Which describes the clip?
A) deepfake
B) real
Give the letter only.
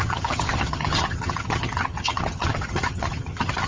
A